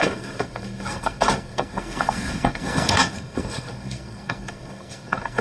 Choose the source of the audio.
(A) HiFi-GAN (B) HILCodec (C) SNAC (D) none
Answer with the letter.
C